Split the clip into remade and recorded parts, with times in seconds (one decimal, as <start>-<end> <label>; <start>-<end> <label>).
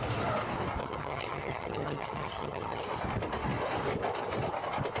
0.0-0.8 recorded; 0.8-2.8 remade; 2.8-5.0 recorded